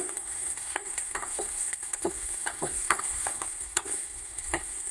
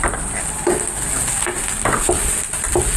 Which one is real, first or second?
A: second